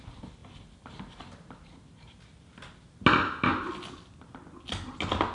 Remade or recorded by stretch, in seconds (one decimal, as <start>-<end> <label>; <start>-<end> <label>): 0.0-5.3 recorded